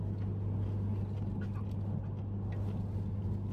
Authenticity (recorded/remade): recorded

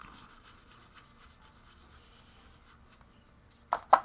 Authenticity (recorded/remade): recorded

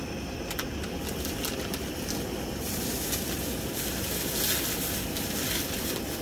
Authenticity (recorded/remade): recorded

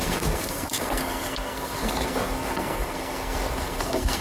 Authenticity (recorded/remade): remade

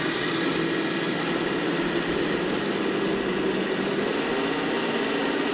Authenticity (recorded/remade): recorded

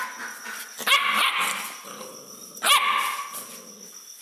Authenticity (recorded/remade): recorded